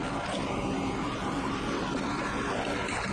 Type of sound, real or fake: real